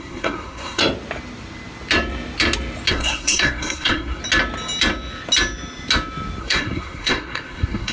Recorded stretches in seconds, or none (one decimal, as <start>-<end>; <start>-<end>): 0.8-2.9; 4.2-6.4